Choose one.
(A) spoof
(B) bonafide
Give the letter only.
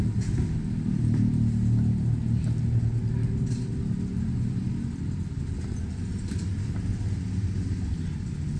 B